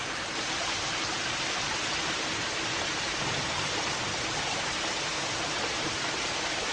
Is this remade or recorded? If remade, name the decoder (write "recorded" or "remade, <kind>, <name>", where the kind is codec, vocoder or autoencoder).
remade, vocoder, BigVGAN v2